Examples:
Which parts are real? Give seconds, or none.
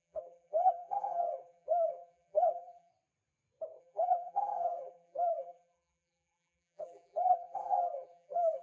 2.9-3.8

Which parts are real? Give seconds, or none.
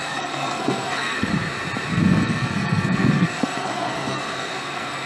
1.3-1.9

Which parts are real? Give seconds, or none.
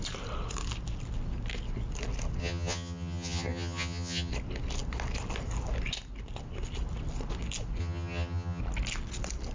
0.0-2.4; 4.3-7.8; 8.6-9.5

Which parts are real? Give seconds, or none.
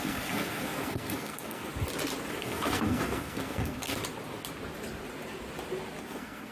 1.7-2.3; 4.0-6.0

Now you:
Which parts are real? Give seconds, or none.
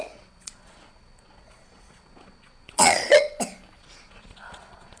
3.3-3.8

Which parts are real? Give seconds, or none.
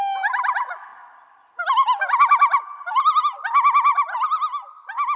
0.0-5.2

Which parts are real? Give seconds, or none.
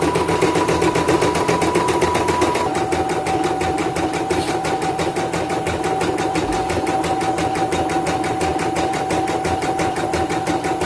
0.0-3.8; 5.5-8.5; 10.3-10.9